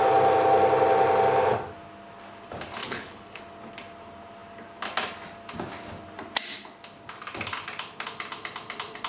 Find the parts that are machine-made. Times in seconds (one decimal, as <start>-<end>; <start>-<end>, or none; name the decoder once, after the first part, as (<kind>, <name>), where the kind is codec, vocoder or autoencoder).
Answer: 2.8-3.4 (codec, HILCodec)